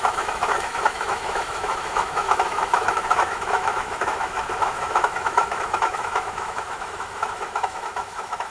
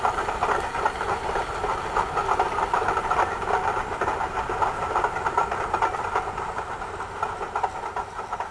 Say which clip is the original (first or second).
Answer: second